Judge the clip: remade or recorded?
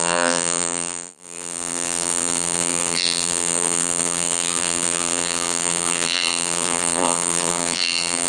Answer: remade